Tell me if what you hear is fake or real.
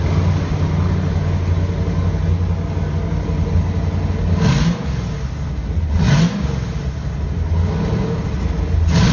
real